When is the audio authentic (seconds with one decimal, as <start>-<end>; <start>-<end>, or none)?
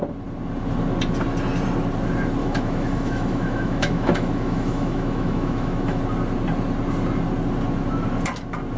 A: 0.0-2.4; 6.0-8.8